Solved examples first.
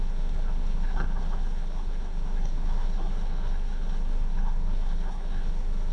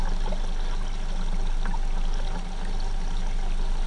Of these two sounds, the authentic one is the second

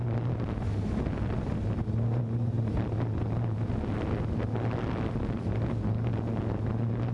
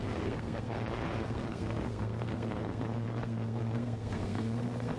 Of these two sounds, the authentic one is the first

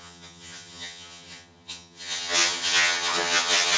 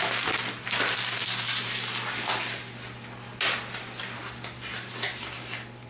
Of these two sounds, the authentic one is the second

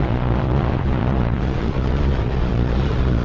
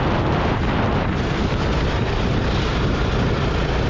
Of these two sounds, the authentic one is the second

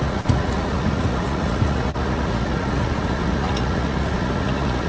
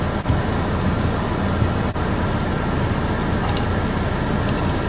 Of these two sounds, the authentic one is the second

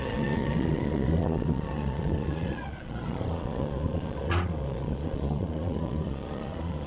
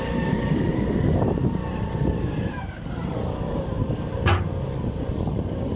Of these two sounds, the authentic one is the second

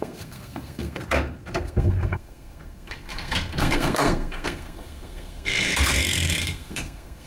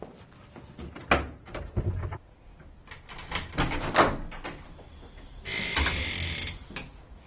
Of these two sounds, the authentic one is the second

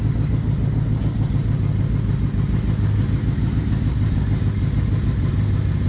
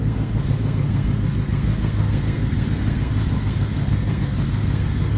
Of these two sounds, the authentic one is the first